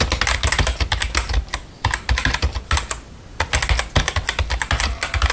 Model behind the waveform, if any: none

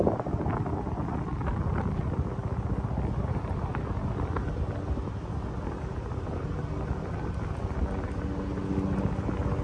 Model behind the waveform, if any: none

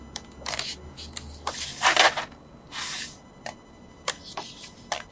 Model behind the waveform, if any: none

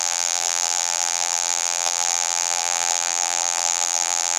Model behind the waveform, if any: vocoder, BigVGAN v2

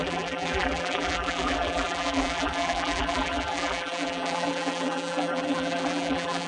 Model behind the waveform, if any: vocoder, BigVGAN v2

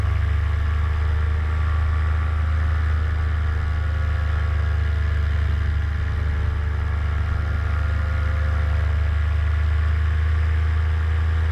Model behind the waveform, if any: none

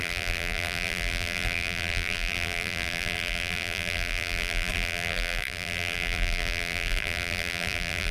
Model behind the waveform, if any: vocoder, BigVGAN v2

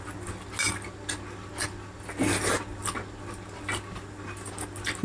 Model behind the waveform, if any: none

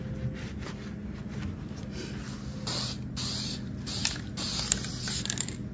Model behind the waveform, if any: none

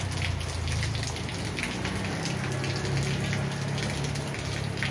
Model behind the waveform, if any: none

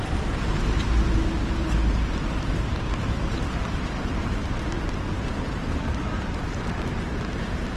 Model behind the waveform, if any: vocoder, BigVGAN v2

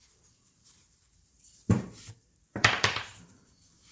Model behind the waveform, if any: vocoder, BigVGAN v2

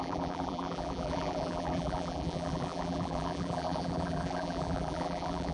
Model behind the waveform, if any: vocoder, BigVGAN v2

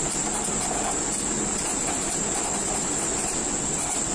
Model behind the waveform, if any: vocoder, BigVGAN v2